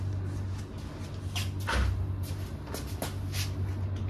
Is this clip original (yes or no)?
yes